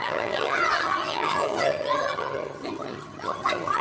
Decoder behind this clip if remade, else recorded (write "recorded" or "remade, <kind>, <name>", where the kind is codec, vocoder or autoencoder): remade, vocoder, HiFi-GAN